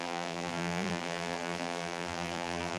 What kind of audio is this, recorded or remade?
remade